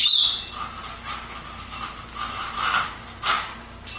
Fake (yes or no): no